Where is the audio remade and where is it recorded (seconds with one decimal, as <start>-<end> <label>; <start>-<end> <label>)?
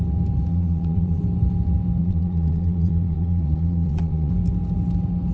0.0-0.5 recorded; 0.5-1.2 remade; 1.2-2.0 recorded; 2.0-4.3 remade; 4.3-5.3 recorded